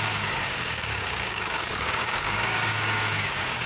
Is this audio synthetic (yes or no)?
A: yes